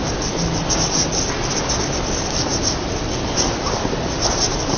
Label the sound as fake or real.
real